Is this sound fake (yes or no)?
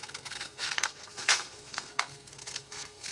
yes